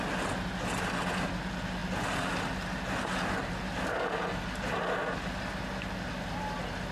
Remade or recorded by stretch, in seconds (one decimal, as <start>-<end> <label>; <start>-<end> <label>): 0.0-6.9 recorded